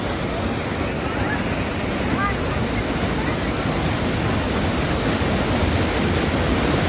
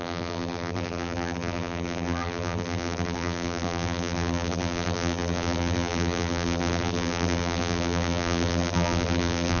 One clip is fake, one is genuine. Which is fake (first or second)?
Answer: second